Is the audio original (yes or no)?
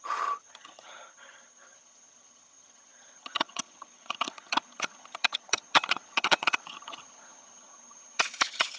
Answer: no